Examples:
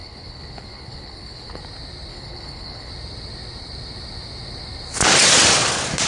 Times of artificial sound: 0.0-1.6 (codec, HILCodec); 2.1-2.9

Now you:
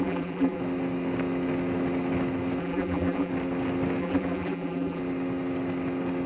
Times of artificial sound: 0.0-0.6 (vocoder, BigVGAN v2); 2.6-3.3; 4.0-5.0